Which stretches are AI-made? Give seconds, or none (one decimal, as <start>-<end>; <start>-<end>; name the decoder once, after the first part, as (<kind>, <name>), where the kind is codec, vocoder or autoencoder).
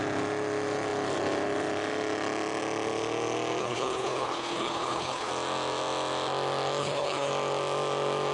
3.6-5.3 (codec, HILCodec); 6.8-7.3